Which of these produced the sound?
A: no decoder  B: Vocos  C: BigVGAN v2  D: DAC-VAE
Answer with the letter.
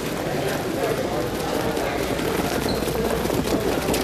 A